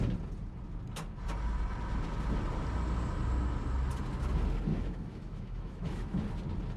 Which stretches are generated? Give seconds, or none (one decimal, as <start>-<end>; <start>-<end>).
4.7-6.2